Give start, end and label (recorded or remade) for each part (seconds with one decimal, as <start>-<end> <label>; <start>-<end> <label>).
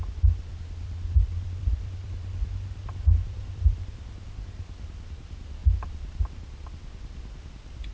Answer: 0.0-0.5 recorded; 0.5-4.1 remade; 4.1-7.9 recorded